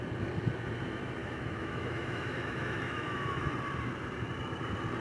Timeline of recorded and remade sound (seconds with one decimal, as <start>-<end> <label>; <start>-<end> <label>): 0.0-1.2 recorded; 1.2-3.5 remade; 3.5-5.0 recorded